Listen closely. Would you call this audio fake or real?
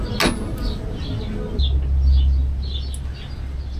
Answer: real